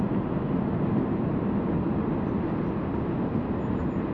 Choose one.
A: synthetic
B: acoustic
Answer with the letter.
B